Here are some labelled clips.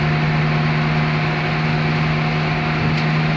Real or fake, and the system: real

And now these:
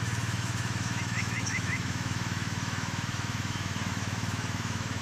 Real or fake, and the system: fake, autoencoder, DAC-VAE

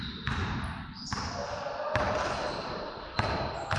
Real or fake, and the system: real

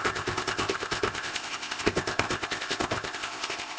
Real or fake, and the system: fake, codec, ZipCodec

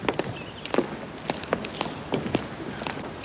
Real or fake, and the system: real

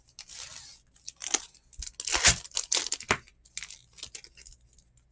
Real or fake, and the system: real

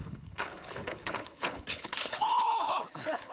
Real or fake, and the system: fake, codec, HILCodec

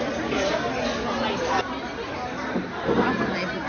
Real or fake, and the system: real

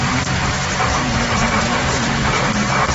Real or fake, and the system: real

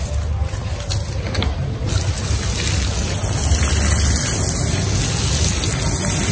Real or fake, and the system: real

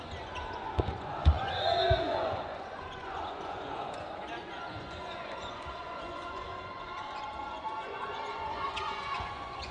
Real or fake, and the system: fake, vocoder, Vocos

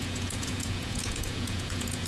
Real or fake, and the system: fake, vocoder, Vocos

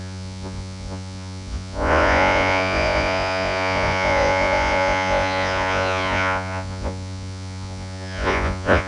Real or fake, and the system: fake, vocoder, Vocos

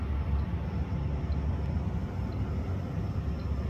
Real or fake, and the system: real